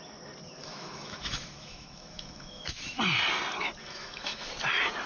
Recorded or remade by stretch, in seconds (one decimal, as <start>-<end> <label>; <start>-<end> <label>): 0.0-0.6 recorded; 0.6-3.0 remade; 3.0-3.8 recorded; 3.8-4.5 remade; 4.5-5.1 recorded